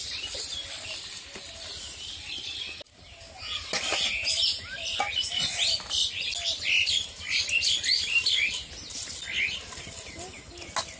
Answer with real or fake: real